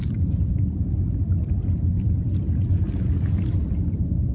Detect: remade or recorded recorded